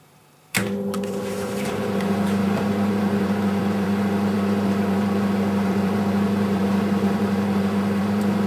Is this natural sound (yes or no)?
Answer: no